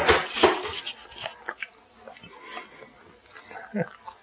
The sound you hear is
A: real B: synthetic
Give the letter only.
A